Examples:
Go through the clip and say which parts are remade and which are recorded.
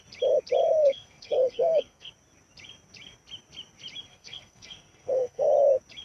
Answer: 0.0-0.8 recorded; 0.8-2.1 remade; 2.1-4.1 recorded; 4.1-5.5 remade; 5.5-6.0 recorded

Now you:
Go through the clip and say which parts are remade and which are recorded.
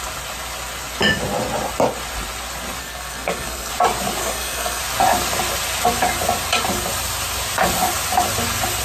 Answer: 0.0-2.8 recorded; 2.8-3.7 remade; 3.7-4.2 recorded; 4.2-4.8 remade; 4.8-8.8 recorded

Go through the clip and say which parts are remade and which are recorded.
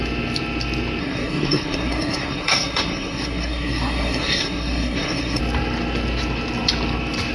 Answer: 0.0-1.0 recorded; 1.0-5.4 remade; 5.4-7.3 recorded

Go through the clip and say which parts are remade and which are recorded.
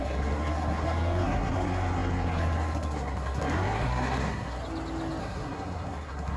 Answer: 0.0-4.6 remade; 4.6-5.2 recorded; 5.2-6.4 remade